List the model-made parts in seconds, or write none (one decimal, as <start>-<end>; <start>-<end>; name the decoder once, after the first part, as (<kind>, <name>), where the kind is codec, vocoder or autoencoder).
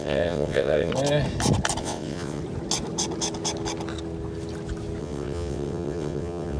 0.0-0.9 (vocoder, WaveNeXt); 1.8-2.4; 5.0-6.6